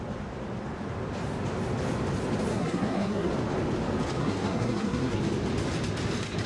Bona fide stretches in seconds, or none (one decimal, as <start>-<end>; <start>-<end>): 0.0-2.5; 3.3-4.2; 5.2-6.5